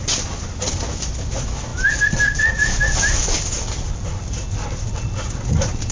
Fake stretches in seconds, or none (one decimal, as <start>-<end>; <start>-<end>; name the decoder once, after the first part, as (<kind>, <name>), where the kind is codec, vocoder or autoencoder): none